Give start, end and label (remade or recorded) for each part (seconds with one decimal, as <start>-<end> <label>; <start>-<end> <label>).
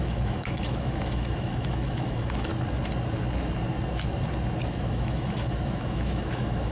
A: 0.0-2.5 remade; 2.5-4.7 recorded; 4.7-6.7 remade